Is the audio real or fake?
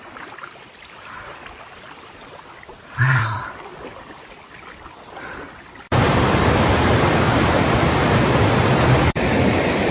fake